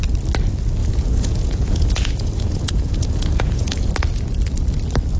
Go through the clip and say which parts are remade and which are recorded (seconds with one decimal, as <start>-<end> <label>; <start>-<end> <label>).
0.0-0.8 recorded; 0.8-3.9 remade; 3.9-5.2 recorded